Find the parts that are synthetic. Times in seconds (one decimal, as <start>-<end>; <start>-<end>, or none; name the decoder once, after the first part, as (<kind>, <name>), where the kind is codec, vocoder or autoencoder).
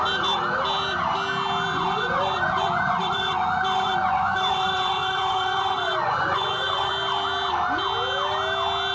1.7-6.9 (vocoder, Vocos)